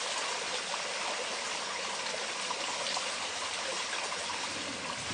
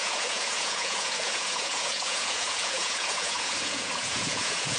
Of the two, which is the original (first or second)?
first